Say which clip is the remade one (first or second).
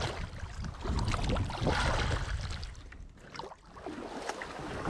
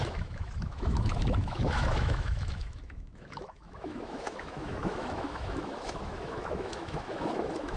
second